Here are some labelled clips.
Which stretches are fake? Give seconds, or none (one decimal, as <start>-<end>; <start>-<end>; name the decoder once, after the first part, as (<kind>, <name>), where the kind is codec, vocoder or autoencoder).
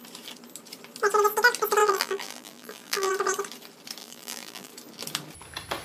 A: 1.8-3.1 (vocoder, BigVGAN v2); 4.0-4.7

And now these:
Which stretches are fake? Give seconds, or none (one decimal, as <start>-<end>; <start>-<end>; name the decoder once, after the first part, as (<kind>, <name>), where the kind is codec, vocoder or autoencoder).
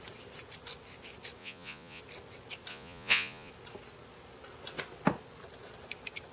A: 1.4-2.0 (vocoder, Vocos); 2.7-3.5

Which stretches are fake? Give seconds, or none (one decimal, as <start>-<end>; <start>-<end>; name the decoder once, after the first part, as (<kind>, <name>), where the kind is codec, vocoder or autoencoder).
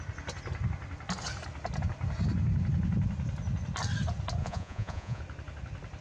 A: 4.4-5.2 (vocoder, Vocos)